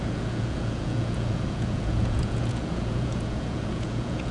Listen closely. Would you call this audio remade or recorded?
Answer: remade